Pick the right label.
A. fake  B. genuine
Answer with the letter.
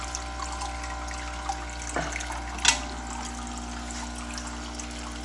B